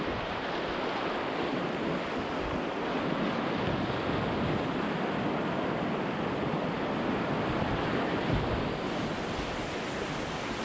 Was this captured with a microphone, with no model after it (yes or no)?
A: yes